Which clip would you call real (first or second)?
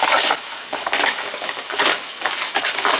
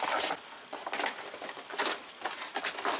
second